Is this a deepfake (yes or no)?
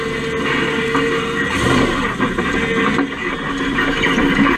no